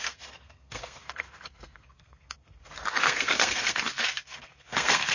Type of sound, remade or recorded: remade